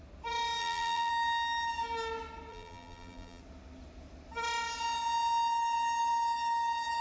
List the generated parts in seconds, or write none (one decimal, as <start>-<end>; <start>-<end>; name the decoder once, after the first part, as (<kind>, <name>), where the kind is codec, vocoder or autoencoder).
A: 0.6-1.1 (vocoder, BigVGAN v2); 2.5-3.4